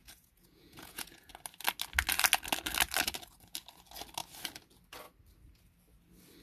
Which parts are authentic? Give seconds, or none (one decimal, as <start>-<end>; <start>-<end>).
1.3-6.4

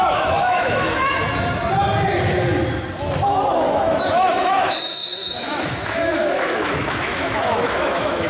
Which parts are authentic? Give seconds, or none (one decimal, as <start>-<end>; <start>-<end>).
1.2-3.5

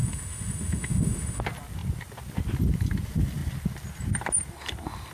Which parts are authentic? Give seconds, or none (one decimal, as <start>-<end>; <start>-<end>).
1.4-5.1

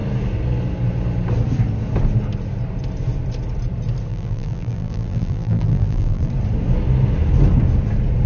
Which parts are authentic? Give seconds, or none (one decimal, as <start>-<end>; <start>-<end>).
0.0-4.1; 6.3-8.3